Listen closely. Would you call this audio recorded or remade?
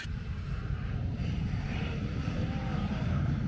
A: remade